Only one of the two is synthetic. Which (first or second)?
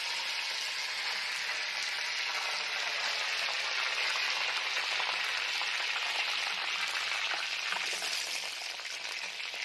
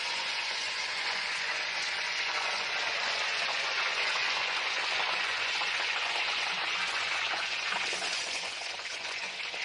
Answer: second